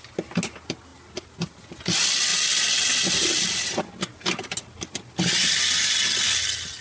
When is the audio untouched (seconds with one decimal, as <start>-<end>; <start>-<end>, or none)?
0.0-6.8